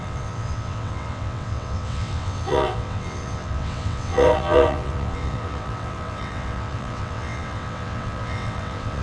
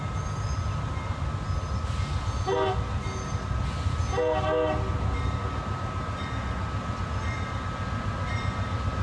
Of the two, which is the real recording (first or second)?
second